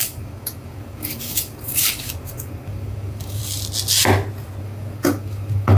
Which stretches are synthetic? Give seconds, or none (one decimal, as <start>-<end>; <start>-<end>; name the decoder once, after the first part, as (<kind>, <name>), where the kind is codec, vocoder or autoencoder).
0.0-3.4 (codec, DAC); 4.6-5.8